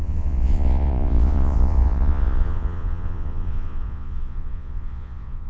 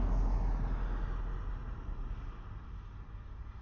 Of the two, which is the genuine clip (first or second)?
second